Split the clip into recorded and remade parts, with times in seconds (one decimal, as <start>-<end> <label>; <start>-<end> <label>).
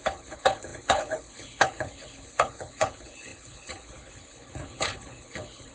0.0-5.7 remade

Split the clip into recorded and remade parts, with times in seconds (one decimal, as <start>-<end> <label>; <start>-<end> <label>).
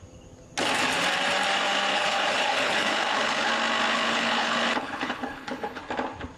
0.0-1.9 recorded; 1.9-3.5 remade; 3.5-3.9 recorded; 3.9-5.8 remade; 5.8-6.4 recorded